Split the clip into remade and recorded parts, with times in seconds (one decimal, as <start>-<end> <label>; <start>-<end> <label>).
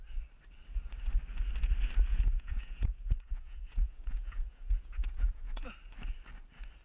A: 0.0-2.1 recorded; 2.1-5.7 remade; 5.7-6.8 recorded